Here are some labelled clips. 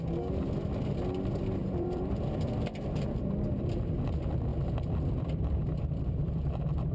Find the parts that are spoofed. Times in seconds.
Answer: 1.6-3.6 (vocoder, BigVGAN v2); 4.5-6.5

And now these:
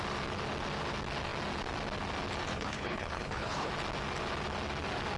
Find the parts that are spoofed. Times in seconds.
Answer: 2.5-3.7 (codec, HILCodec)

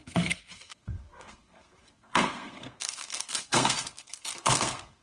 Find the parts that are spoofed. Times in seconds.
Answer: 0.0-5.0 (codec, SNAC)

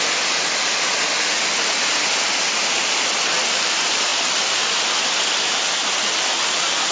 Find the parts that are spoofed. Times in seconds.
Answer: none